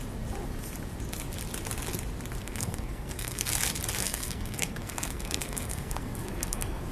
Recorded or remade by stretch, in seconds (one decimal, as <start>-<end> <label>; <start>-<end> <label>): 0.0-2.4 recorded; 2.4-3.5 remade; 3.5-4.0 recorded; 4.0-6.9 remade